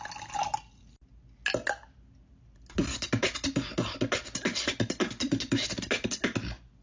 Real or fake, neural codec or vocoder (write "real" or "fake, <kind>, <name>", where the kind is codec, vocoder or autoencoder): real